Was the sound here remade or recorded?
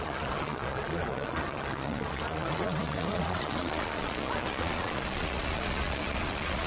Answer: remade